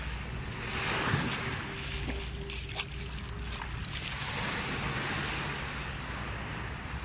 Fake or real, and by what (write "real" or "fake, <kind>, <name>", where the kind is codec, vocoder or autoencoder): real